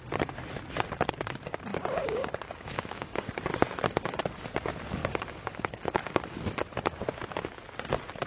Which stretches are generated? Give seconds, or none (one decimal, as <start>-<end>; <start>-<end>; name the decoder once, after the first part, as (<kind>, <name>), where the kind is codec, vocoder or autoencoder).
1.7-3.3 (codec, DAC); 5.0-6.2